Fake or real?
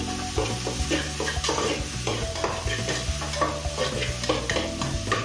real